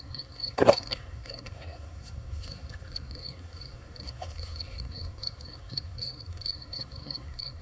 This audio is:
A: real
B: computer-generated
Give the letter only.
B